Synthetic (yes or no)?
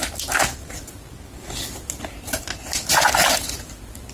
no